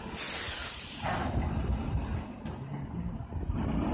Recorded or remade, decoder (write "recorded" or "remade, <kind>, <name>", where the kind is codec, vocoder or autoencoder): recorded